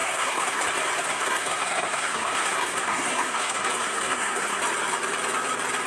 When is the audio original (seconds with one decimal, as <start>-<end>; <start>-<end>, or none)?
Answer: 0.6-1.1; 4.6-5.9